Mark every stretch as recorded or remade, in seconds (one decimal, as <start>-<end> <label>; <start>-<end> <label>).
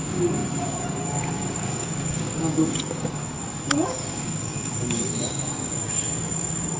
0.0-6.8 remade